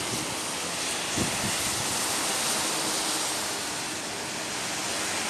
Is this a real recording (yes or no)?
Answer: yes